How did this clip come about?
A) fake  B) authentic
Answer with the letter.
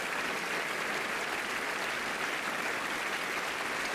B